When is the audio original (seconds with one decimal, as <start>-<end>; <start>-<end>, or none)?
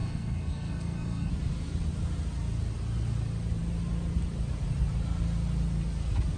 1.3-6.4